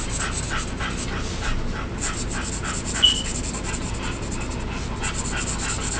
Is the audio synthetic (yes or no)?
no